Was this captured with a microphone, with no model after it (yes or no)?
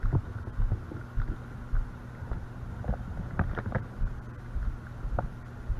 yes